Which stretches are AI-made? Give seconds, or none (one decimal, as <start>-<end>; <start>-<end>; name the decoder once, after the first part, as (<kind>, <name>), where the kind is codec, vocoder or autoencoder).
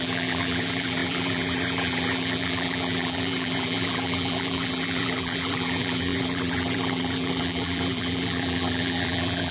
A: 0.0-9.5 (vocoder, BigVGAN v2)